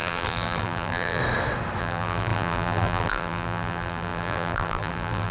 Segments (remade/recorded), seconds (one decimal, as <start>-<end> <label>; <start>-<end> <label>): 0.0-1.2 remade; 1.2-1.8 recorded; 1.8-5.3 remade

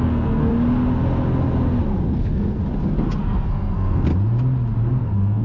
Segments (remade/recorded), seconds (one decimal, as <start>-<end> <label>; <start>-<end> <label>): 0.0-0.5 remade; 0.5-2.2 recorded; 2.2-2.6 remade; 2.6-3.2 recorded; 3.2-4.1 remade; 4.1-5.0 recorded; 5.0-5.4 remade

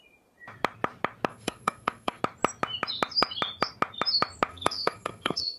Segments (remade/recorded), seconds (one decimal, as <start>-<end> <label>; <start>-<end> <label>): 0.0-1.3 recorded; 1.3-2.2 remade; 2.2-4.5 recorded; 4.5-5.6 remade

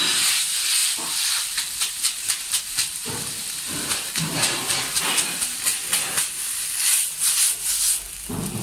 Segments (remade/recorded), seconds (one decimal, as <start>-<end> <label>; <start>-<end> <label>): 0.0-0.8 recorded; 0.8-5.0 remade; 5.0-8.6 recorded